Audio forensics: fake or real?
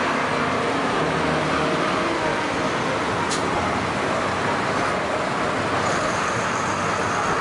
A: real